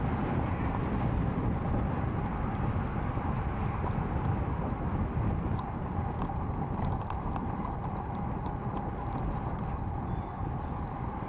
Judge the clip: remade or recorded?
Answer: recorded